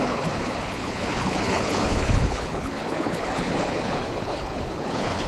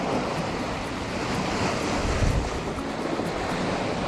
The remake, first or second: first